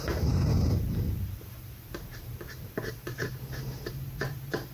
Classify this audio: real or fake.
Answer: fake